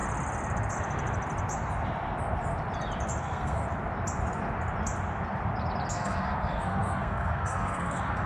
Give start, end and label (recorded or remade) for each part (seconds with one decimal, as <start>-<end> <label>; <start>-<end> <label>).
0.0-3.2 recorded; 3.2-3.6 remade; 3.6-5.9 recorded; 5.9-8.3 remade